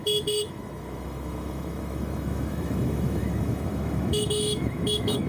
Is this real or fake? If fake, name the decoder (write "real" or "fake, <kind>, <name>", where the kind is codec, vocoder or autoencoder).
fake, autoencoder, DAC-VAE